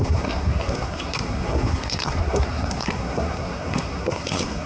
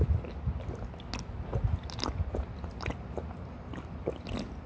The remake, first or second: first